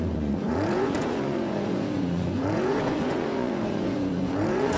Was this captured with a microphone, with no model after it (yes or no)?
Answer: no